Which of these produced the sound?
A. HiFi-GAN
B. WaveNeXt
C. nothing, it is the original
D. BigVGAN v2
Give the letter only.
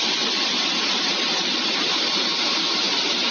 C